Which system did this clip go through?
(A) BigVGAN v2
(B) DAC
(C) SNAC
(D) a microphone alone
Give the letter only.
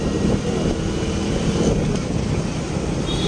A